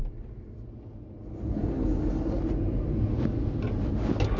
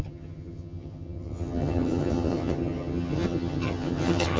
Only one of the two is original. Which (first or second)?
first